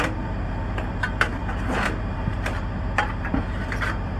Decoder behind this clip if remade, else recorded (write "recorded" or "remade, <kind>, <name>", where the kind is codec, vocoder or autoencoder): remade, vocoder, BigVGAN v2